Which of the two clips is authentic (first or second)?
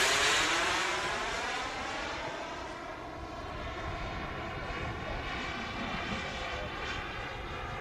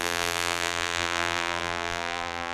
first